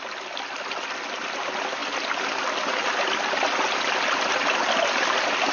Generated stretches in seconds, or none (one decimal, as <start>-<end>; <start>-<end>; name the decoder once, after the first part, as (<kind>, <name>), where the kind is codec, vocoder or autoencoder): none